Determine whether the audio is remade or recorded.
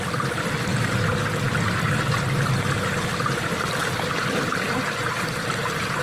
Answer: recorded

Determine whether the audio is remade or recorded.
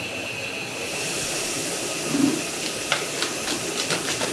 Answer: recorded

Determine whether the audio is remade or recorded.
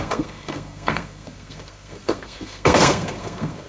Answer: remade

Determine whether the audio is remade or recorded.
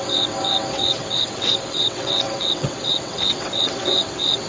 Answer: remade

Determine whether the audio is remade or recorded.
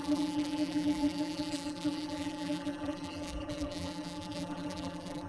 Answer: remade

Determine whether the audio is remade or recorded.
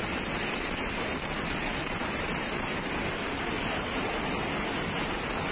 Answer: recorded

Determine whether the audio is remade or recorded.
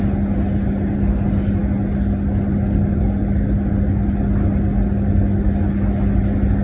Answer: recorded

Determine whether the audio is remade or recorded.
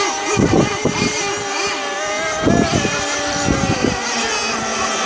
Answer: recorded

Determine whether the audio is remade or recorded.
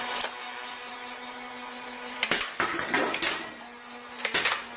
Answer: recorded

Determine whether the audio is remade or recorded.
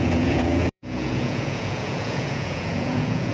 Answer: remade